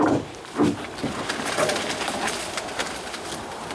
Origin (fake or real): fake